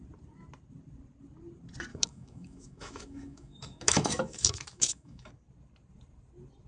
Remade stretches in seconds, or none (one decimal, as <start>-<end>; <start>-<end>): 1.9-5.3